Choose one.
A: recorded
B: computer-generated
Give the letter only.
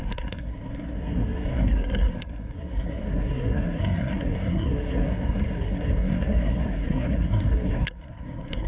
B